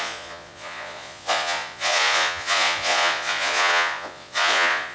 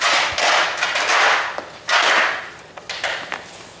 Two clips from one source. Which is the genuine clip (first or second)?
second